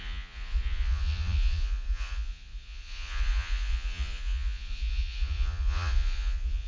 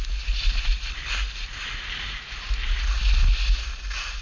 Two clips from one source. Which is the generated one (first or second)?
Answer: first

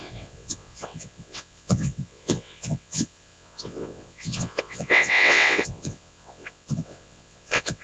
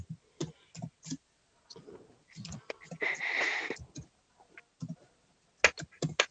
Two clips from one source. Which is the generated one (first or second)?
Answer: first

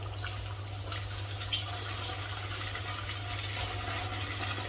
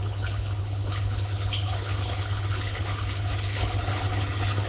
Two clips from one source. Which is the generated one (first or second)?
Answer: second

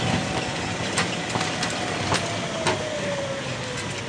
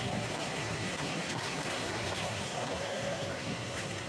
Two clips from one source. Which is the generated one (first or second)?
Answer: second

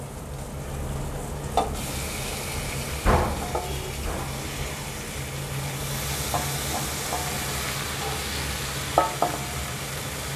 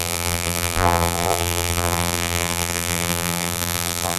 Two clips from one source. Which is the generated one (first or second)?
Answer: second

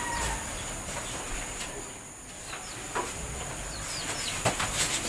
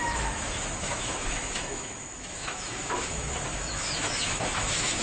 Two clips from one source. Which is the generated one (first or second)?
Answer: second